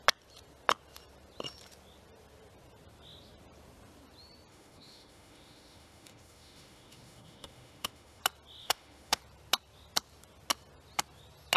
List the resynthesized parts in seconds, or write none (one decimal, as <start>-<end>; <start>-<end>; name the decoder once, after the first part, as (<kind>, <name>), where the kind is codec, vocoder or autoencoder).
4.5-8.2 (autoencoder, DAC-VAE); 8.6-9.2